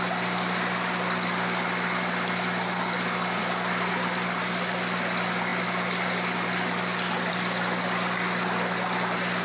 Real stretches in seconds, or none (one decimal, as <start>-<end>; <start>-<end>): 0.0-9.4